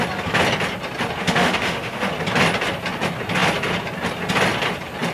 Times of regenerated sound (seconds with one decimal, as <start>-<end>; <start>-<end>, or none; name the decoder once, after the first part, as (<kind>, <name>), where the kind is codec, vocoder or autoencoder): 1.2-2.1 (autoencoder, DAC-VAE)